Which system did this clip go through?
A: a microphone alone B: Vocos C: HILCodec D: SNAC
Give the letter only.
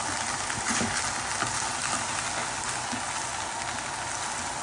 A